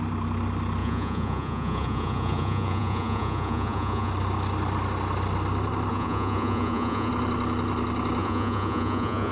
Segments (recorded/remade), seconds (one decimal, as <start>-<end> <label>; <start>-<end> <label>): 0.0-0.8 recorded; 0.8-4.1 remade; 4.1-5.9 recorded; 5.9-7.1 remade; 7.1-8.2 recorded; 8.2-9.3 remade